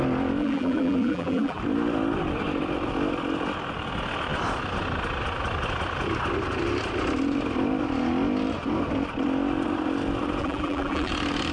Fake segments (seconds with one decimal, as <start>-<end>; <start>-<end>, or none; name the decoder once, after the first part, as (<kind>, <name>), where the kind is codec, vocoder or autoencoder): 0.4-1.6 (vocoder, BigVGAN v2); 10.4-11.1